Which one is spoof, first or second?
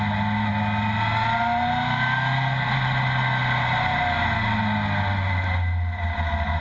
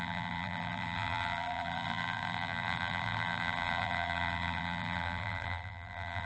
second